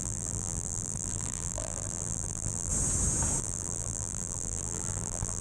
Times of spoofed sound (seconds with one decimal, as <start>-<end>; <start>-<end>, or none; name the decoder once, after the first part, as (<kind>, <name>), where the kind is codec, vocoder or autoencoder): 0.0-2.7 (vocoder, BigVGAN v2); 3.4-5.4